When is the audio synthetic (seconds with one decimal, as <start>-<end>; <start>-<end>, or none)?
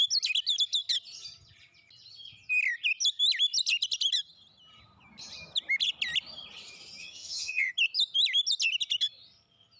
7.0-7.7